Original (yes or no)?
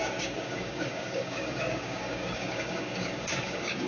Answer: no